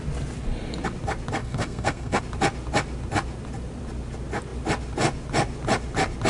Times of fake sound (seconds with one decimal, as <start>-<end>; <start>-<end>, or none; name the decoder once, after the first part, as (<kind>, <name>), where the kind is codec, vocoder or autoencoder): 1.4-2.2 (codec, SNAC)